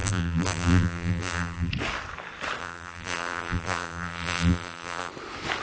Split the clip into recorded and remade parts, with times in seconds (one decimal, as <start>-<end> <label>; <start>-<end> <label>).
0.0-1.7 remade; 1.7-2.6 recorded; 2.6-5.1 remade; 5.1-5.6 recorded